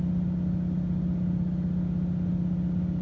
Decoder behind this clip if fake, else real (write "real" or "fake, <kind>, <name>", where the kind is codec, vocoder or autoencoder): real